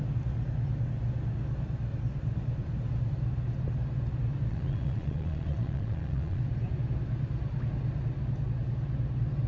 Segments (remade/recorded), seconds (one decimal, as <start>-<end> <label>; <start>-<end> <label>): 0.0-4.5 recorded; 4.5-6.4 remade; 6.4-9.5 recorded